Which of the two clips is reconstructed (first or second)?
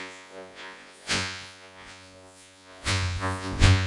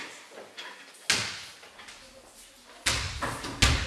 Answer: first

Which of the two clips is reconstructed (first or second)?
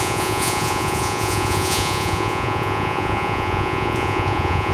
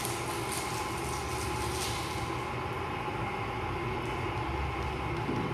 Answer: first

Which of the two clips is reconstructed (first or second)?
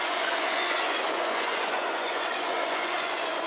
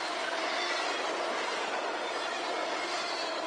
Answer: first